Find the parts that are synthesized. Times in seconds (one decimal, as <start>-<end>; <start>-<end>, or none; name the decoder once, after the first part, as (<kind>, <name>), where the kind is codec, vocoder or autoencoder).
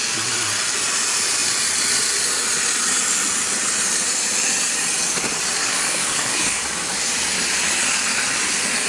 5.6-7.1 (codec, DAC)